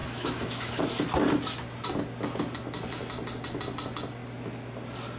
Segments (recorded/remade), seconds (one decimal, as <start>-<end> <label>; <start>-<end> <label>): 0.0-0.8 remade; 0.8-5.2 recorded